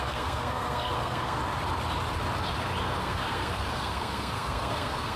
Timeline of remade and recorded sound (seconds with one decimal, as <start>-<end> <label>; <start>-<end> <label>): 0.0-1.4 remade; 1.4-3.0 recorded; 3.0-5.2 remade